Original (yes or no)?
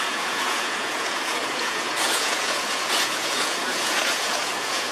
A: no